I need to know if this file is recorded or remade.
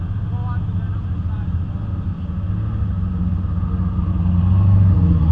recorded